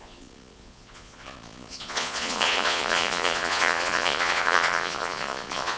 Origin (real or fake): fake